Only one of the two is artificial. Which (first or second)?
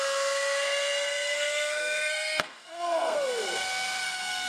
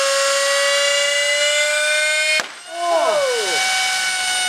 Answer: first